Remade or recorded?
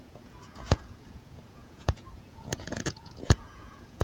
remade